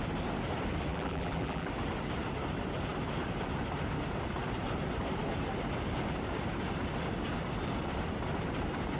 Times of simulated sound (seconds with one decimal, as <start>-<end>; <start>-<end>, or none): 0.9-1.7